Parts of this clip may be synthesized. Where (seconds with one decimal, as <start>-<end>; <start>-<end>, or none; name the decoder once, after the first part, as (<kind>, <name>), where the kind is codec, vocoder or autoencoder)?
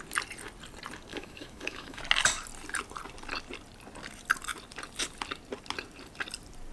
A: 1.1-2.0 (autoencoder, DAC-VAE)